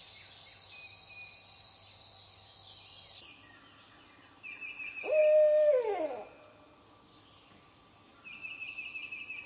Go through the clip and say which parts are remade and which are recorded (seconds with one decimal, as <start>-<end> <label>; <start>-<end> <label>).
0.0-9.5 recorded